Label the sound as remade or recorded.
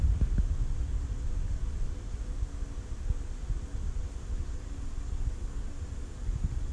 recorded